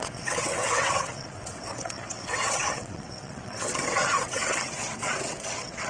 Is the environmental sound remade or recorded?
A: remade